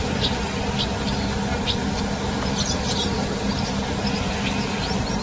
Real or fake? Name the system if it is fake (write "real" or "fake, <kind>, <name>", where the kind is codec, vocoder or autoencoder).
real